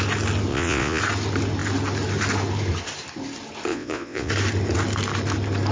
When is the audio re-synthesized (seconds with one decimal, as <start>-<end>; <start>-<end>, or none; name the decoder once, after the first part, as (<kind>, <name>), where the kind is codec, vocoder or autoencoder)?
0.5-1.0 (vocoder, Vocos); 3.7-4.3